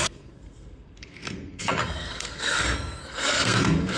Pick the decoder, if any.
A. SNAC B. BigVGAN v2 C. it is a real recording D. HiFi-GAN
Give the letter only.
A